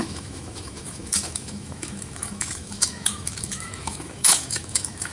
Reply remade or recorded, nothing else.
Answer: remade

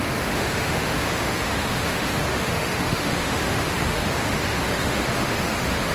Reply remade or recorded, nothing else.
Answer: remade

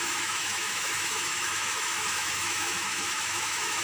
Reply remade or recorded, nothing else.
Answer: remade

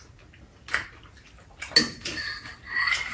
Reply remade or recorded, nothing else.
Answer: recorded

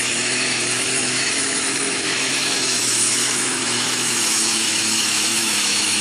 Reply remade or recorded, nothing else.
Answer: remade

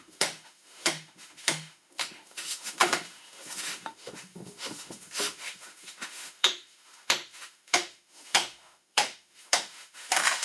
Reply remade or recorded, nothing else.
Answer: remade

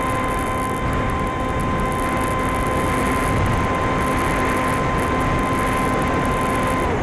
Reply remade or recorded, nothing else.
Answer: recorded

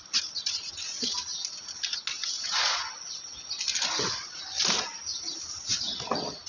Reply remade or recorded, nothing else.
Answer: recorded